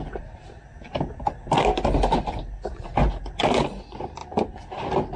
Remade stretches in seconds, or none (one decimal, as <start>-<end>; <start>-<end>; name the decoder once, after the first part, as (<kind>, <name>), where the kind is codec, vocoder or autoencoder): none